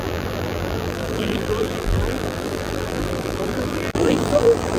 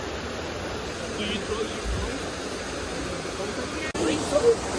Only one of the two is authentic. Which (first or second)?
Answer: second